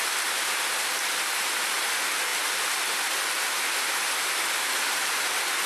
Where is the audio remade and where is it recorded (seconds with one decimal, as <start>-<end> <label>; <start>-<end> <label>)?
0.0-5.7 recorded